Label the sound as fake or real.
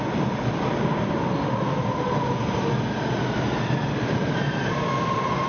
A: real